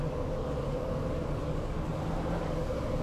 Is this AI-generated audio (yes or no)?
yes